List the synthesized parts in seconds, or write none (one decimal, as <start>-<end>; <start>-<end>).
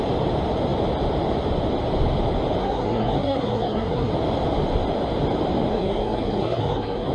2.6-4.1; 5.7-7.1